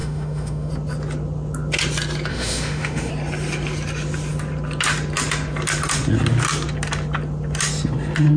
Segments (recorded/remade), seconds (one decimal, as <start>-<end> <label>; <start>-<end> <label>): 0.0-0.7 remade; 0.7-2.3 recorded; 2.3-3.1 remade; 3.1-8.4 recorded